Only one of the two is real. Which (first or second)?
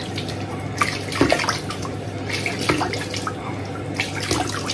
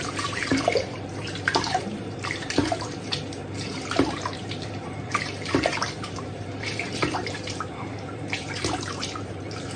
first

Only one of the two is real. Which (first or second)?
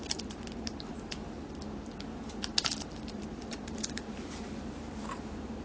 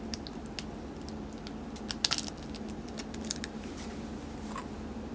second